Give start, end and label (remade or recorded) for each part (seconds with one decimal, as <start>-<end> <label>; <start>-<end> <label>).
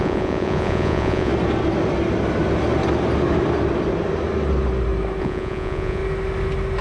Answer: 0.0-1.3 remade; 1.3-5.2 recorded; 5.2-6.0 remade; 6.0-6.8 recorded